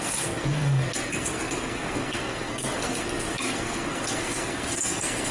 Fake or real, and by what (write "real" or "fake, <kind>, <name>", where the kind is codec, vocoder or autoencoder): fake, codec, SNAC